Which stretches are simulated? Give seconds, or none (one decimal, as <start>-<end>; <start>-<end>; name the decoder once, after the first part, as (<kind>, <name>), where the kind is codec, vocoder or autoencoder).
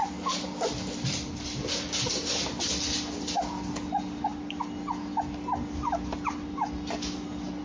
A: none